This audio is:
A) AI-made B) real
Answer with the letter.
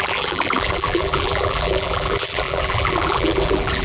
A